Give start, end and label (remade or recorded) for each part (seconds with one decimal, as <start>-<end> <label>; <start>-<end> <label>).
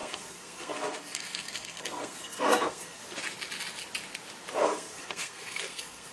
0.0-3.0 remade; 3.0-4.6 recorded; 4.6-6.1 remade